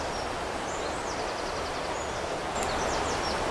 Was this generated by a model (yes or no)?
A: no